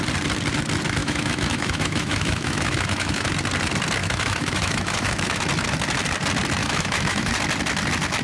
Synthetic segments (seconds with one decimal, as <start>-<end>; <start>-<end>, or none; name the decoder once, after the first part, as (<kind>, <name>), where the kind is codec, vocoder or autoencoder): 1.0-3.3 (autoencoder, DAC-VAE); 4.0-5.4; 6.6-7.3

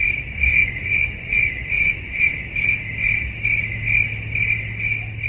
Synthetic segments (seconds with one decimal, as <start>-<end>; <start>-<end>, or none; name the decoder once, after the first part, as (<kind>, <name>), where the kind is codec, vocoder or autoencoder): 0.6-2.2 (vocoder, Vocos)

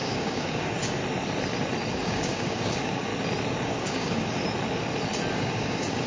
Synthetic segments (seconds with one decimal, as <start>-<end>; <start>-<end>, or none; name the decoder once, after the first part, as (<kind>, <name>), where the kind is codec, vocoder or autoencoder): 0.0-1.0 (codec, DAC); 1.9-3.1; 3.6-4.4; 5.3-6.1

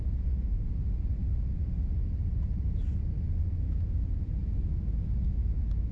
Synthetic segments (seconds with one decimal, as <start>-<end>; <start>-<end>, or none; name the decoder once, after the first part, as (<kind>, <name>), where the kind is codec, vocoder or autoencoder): 3.5-5.9 (autoencoder, DAC-VAE)

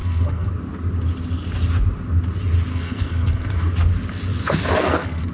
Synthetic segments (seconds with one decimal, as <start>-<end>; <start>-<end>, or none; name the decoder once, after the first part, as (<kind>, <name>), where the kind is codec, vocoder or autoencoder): 0.0-0.5 (codec, SNAC); 2.7-3.7; 4.4-5.3

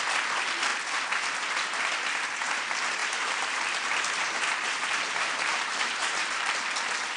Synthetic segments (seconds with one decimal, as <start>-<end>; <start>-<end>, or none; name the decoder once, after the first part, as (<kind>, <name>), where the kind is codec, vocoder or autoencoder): 3.0-6.8 (vocoder, BigVGAN v2)